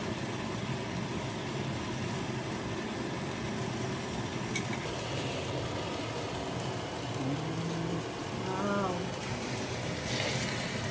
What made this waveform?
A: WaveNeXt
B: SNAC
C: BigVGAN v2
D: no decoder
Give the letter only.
D